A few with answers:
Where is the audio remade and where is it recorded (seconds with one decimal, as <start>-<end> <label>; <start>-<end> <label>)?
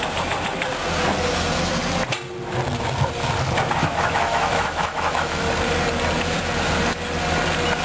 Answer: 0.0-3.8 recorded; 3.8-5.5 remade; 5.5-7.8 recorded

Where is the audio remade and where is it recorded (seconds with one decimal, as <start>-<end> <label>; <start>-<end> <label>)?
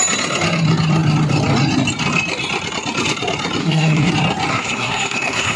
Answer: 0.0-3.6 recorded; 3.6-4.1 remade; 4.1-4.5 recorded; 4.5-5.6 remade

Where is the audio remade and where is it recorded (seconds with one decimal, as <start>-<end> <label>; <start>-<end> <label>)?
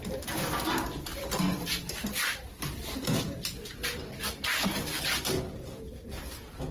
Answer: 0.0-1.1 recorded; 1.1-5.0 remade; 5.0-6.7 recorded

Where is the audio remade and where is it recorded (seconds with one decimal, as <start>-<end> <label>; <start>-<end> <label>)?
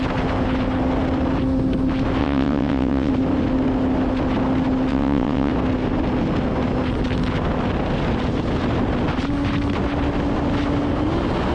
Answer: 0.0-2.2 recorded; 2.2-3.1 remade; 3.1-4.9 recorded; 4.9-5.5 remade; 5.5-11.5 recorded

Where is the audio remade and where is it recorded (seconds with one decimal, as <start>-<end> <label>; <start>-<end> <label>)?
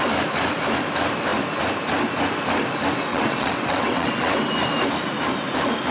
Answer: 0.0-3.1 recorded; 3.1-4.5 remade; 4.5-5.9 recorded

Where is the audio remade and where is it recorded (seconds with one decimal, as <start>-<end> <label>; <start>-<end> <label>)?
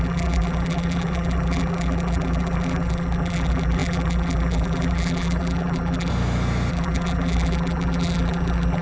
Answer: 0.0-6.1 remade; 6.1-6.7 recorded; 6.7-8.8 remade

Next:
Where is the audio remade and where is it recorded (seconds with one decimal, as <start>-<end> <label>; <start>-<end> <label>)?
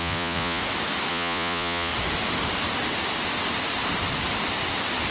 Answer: 0.0-0.6 remade; 0.6-1.1 recorded; 1.1-1.9 remade; 1.9-5.1 recorded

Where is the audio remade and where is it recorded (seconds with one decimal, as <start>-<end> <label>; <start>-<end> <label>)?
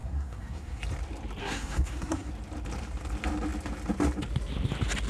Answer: 0.0-0.8 remade; 0.8-1.4 recorded; 1.4-2.3 remade; 2.3-5.1 recorded